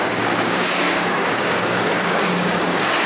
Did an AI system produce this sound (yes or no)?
yes